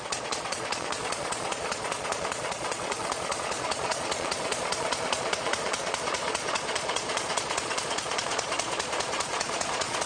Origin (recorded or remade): remade